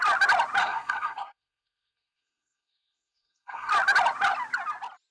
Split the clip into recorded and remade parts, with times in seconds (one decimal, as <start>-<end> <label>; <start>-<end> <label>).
0.0-0.6 recorded; 0.6-3.7 remade; 3.7-5.1 recorded